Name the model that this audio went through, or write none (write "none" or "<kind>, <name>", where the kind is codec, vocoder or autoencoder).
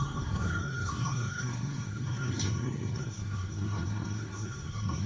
codec, SNAC